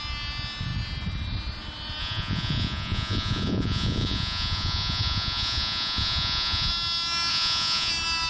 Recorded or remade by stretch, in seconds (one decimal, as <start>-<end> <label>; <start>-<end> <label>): 0.0-2.0 recorded; 2.0-6.7 remade; 6.7-7.3 recorded; 7.3-7.9 remade; 7.9-8.3 recorded